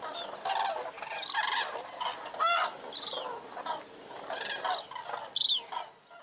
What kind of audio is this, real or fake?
real